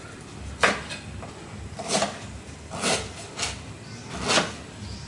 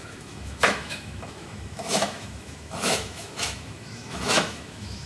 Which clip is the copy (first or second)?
second